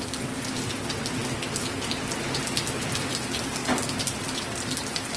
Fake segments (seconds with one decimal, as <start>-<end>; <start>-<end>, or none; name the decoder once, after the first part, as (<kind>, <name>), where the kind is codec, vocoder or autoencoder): none